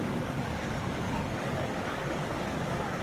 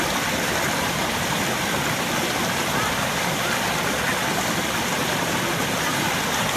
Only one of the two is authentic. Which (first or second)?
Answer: second